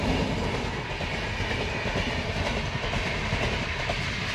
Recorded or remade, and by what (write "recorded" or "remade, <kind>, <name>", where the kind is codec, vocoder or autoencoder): recorded